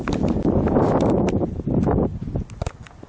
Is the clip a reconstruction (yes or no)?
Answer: no